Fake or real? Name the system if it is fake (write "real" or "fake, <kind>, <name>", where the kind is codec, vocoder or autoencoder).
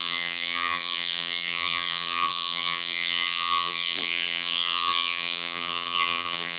fake, vocoder, BigVGAN v2